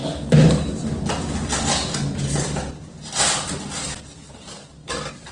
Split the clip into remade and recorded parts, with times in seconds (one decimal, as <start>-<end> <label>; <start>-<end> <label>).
0.0-3.2 remade; 3.2-4.8 recorded; 4.8-5.3 remade